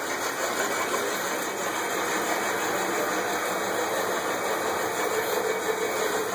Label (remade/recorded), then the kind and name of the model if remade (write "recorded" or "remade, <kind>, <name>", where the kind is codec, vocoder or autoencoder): recorded